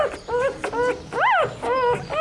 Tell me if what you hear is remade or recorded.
recorded